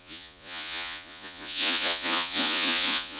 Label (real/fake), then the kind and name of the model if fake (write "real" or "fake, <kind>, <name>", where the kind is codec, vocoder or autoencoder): fake, vocoder, Vocos